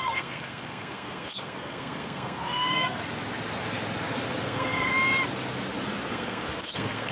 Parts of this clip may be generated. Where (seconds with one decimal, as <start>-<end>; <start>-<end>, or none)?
0.0-3.0; 4.4-4.9; 6.1-7.1